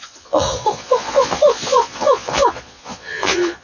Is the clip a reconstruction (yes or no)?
yes